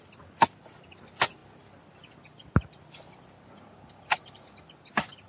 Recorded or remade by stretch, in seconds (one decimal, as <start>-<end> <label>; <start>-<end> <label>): 0.0-5.3 recorded